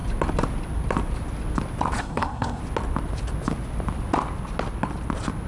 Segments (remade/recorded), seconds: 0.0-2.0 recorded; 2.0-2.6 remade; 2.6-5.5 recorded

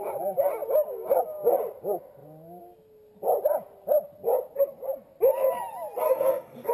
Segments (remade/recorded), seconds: 0.0-6.0 recorded; 6.0-6.7 remade

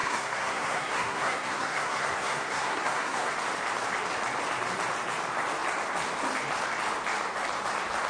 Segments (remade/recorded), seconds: 0.0-3.3 remade; 3.3-8.1 recorded

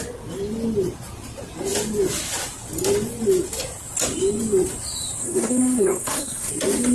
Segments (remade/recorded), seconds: 0.0-5.2 recorded; 5.2-6.5 remade; 6.5-6.9 recorded

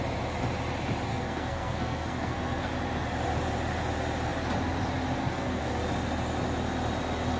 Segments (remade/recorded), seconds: 0.0-1.1 recorded; 1.1-2.7 remade; 2.7-5.2 recorded; 5.2-5.8 remade; 5.8-7.4 recorded